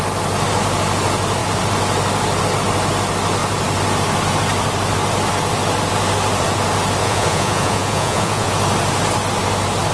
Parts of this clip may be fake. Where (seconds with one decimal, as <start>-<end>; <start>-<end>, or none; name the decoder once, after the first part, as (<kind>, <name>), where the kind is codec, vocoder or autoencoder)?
7.0-8.5 (vocoder, Vocos)